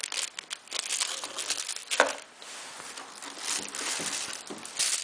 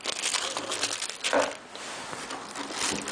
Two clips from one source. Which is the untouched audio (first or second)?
first